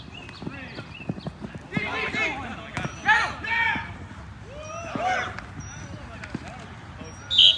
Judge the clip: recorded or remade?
recorded